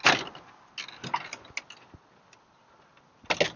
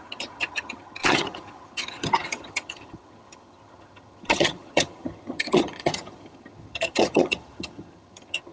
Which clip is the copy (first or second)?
second